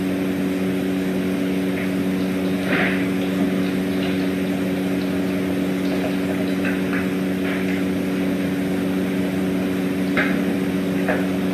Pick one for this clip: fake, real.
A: real